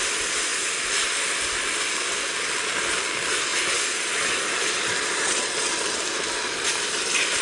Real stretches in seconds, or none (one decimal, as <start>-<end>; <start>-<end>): 0.0-7.4